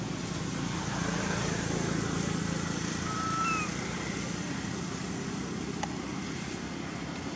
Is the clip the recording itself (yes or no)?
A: yes